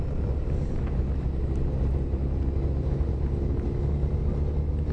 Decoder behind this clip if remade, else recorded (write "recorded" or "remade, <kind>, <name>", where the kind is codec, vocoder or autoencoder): recorded